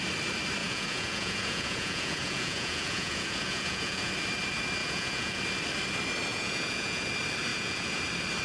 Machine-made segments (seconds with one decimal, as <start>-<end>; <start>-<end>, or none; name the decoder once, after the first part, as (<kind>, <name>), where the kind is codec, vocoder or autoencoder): 0.6-4.1 (vocoder, Vocos); 4.8-5.4; 6.3-7.1; 7.5-8.0